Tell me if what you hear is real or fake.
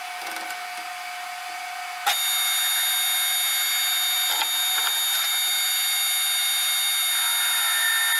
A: real